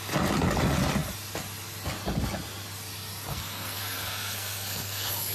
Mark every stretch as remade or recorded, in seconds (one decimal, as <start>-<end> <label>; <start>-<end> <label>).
0.0-3.3 recorded; 3.3-5.3 remade